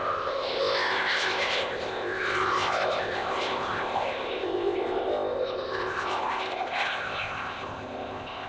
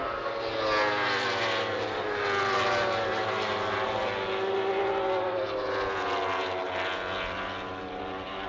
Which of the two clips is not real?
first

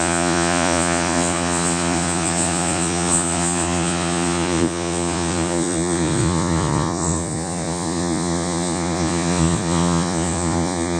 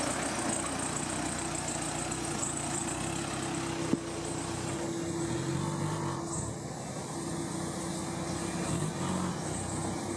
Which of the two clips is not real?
first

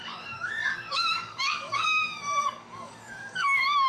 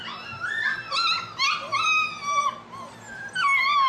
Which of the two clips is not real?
first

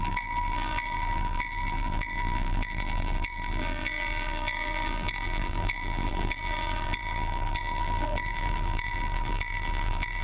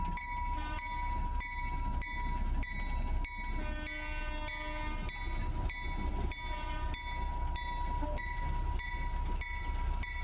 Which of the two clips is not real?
first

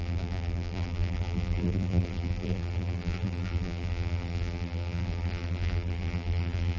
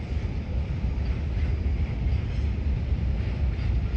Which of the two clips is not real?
first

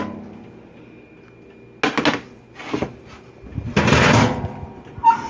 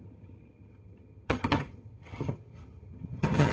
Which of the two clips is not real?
second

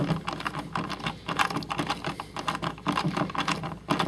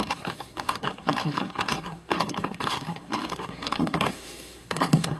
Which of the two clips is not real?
second